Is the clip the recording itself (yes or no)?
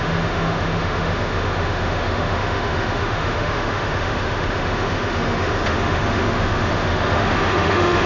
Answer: no